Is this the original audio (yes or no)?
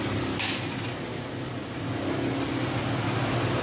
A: yes